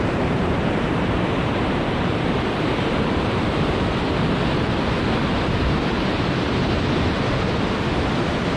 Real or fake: fake